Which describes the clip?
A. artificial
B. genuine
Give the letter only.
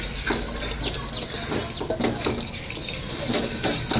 B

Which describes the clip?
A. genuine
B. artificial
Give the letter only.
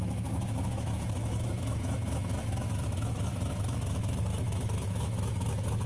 B